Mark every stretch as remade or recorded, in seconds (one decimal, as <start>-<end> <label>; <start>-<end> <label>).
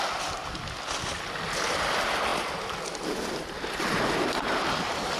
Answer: 0.0-5.2 recorded